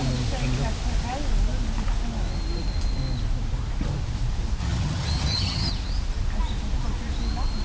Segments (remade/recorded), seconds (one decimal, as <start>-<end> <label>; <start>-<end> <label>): 0.0-4.6 recorded; 4.6-5.7 remade; 5.7-7.6 recorded